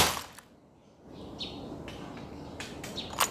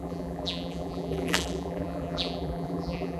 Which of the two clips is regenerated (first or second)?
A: second